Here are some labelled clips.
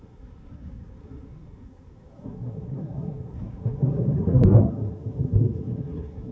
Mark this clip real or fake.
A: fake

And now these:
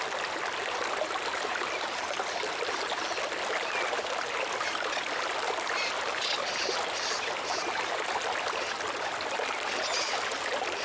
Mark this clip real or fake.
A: real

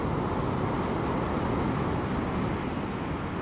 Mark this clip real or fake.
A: real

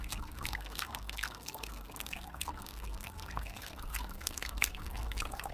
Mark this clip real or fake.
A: fake